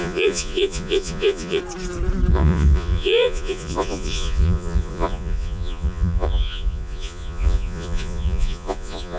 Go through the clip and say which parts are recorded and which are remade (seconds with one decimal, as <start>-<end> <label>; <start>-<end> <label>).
0.0-1.6 remade; 1.6-2.3 recorded; 2.3-9.2 remade